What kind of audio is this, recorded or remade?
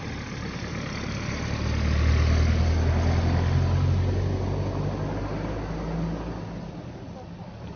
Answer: recorded